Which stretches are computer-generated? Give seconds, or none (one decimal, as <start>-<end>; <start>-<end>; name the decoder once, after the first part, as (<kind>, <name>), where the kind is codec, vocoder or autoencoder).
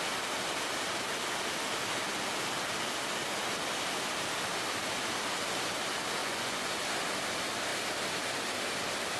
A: 6.2-6.7 (vocoder, Vocos)